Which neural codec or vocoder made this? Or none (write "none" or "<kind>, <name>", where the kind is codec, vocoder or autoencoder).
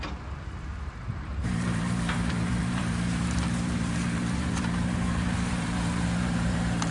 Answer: vocoder, BigVGAN v2